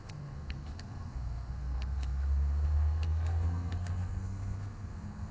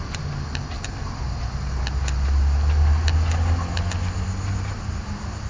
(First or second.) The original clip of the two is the second